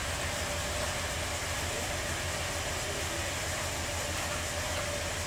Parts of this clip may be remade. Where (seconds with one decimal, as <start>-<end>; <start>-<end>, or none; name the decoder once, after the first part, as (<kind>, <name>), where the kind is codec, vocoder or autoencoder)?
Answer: none

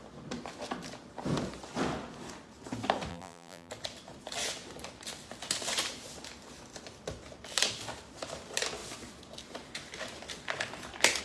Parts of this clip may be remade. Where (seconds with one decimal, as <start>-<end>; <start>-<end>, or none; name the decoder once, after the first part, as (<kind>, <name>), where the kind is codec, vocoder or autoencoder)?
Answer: 3.1-3.7 (vocoder, BigVGAN v2)

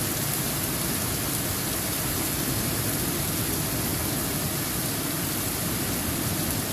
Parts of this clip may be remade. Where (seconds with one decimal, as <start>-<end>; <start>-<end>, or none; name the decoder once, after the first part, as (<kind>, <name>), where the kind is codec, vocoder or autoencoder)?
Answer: none

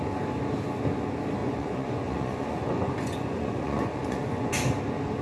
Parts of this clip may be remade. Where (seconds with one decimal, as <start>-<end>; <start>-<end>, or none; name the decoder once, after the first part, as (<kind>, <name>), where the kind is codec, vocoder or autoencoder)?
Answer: 1.4-4.5 (vocoder, Vocos)

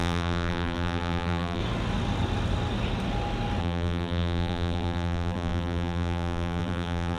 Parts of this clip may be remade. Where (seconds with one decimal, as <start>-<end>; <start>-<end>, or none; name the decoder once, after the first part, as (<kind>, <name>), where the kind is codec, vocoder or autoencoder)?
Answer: 0.0-1.6 (vocoder, BigVGAN v2); 3.6-7.2

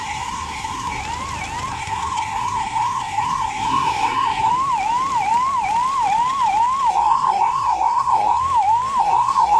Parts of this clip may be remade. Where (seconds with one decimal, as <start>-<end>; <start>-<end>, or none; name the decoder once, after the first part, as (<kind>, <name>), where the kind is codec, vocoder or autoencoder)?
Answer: 0.0-1.0 (codec, SNAC); 1.7-4.5; 6.9-8.4; 9.0-9.6

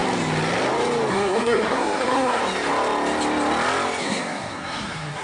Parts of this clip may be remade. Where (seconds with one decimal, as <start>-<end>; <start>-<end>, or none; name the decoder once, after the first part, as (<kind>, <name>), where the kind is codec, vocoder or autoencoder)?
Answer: 1.1-2.4 (codec, SNAC); 4.0-5.2

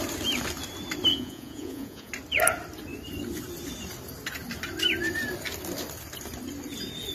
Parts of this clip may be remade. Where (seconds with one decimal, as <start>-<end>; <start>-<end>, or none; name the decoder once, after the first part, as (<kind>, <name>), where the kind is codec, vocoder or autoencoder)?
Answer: 1.1-2.1 (vocoder, Vocos)